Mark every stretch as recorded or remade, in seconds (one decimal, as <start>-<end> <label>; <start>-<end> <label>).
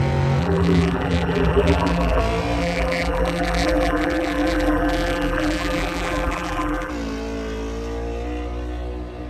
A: 0.0-0.4 recorded; 0.4-2.2 remade; 2.2-2.6 recorded; 2.6-6.9 remade; 6.9-9.3 recorded